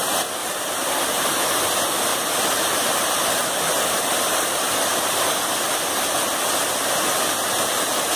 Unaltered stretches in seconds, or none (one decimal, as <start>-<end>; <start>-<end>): 0.0-0.4; 0.9-2.1; 5.7-8.2